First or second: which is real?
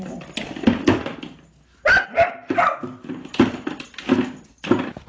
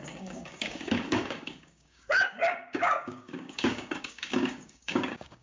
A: first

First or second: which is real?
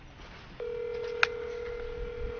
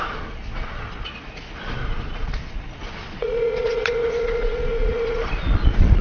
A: first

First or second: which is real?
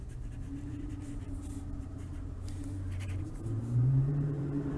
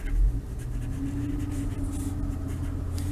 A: second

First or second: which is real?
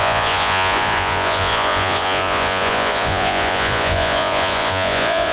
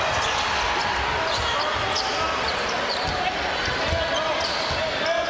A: second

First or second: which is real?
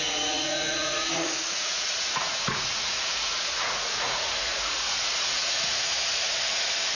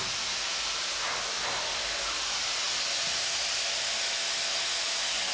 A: second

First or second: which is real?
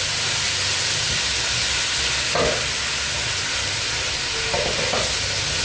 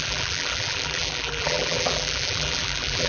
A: first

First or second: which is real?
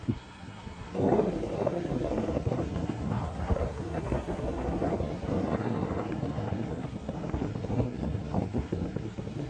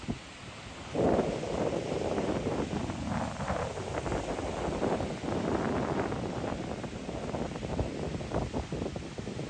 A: second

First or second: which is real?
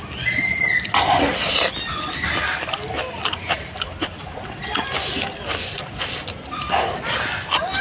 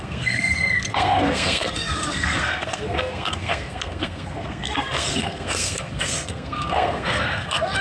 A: first